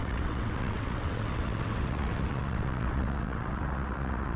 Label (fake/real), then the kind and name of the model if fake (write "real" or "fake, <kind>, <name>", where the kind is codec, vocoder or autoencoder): fake, vocoder, WaveNeXt